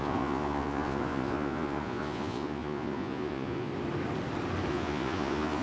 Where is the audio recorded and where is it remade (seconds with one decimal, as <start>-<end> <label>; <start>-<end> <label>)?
0.0-3.7 remade; 3.7-4.7 recorded; 4.7-5.6 remade